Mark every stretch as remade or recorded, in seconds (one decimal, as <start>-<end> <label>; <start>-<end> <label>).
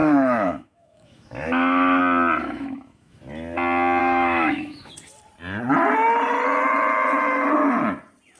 0.0-2.0 remade; 2.0-2.4 recorded; 2.4-3.2 remade; 3.2-4.0 recorded; 4.0-4.9 remade; 4.9-8.4 recorded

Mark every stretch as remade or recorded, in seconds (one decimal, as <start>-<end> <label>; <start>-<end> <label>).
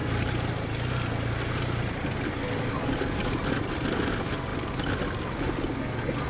0.0-6.3 recorded